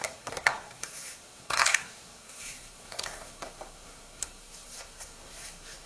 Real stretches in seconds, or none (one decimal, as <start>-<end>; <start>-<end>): none